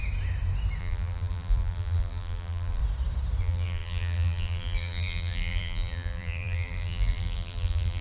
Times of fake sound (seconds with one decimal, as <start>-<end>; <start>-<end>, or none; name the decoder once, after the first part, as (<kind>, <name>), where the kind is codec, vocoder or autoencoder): 0.8-2.8 (vocoder, BigVGAN v2); 3.4-8.0